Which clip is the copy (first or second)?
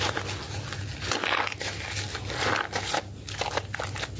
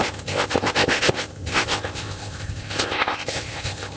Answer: second